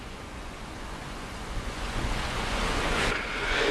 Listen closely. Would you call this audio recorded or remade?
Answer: remade